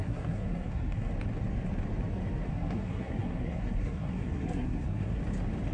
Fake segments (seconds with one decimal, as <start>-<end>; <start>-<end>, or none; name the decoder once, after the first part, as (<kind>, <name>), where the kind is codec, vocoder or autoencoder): 0.0-1.1 (codec, SNAC); 2.5-5.2